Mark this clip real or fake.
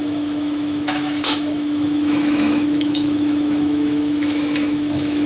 fake